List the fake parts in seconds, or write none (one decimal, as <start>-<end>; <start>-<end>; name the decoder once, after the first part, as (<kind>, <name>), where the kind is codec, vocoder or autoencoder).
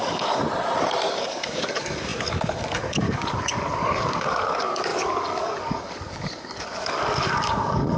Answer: 0.0-0.4 (codec, DAC); 1.1-8.0